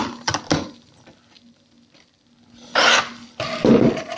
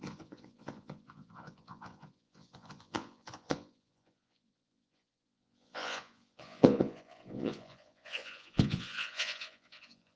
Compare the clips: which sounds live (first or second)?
first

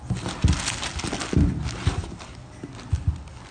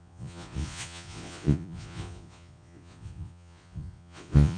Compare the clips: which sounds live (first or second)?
first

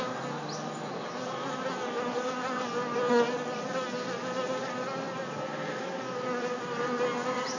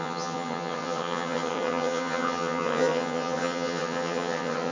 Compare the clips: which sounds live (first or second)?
first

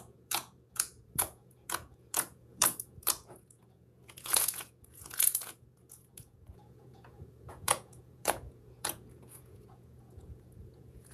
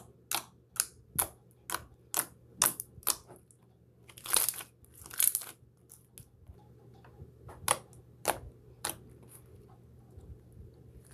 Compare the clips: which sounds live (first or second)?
second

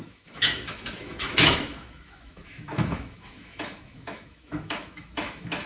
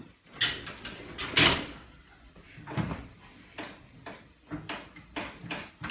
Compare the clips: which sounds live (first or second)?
second